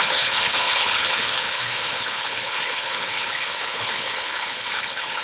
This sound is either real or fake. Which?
fake